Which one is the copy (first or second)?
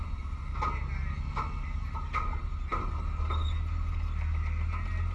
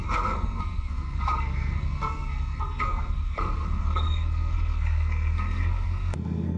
second